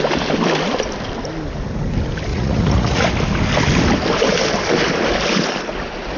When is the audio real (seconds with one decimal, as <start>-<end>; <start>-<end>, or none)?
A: 0.0-2.3; 3.1-6.2